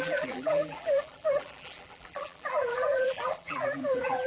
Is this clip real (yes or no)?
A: no